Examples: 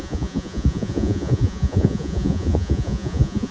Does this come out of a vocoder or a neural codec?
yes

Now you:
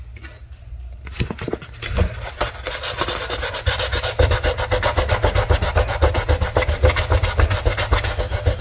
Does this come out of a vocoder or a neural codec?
no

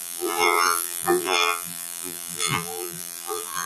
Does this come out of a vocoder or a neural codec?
yes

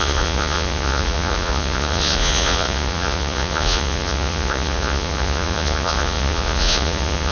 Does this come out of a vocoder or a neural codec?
yes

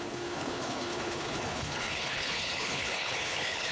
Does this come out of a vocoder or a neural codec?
yes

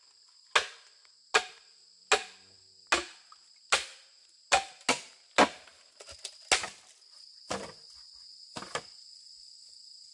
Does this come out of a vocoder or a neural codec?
no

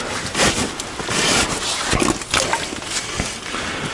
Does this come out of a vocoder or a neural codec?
no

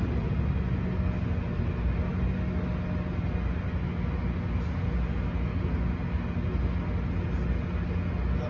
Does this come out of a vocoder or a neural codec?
no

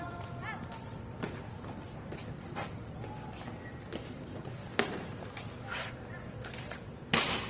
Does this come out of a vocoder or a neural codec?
no